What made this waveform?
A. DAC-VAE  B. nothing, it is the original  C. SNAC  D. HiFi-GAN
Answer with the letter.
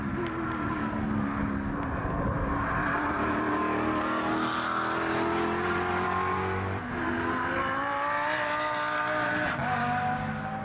B